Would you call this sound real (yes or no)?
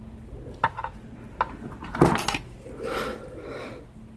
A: no